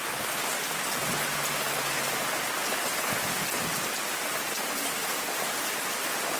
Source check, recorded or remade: recorded